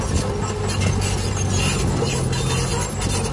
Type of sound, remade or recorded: recorded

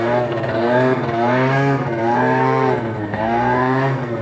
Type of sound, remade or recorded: remade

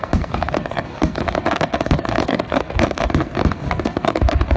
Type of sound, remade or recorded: remade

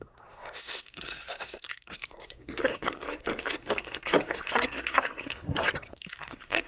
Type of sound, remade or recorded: remade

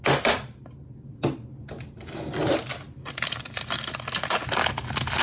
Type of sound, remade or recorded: recorded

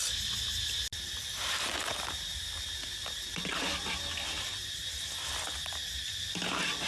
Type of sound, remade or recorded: recorded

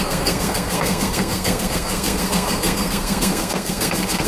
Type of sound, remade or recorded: remade